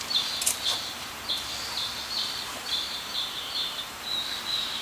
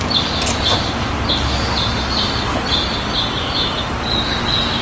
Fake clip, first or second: first